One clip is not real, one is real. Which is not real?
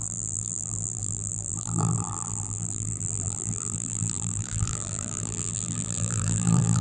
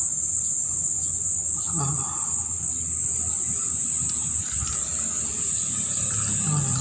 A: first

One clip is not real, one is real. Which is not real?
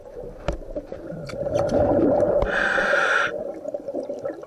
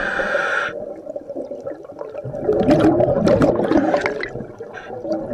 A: first